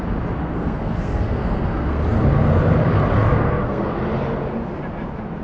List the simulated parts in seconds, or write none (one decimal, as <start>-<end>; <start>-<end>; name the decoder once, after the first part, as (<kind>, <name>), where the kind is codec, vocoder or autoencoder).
0.4-2.0 (codec, SNAC); 3.3-3.8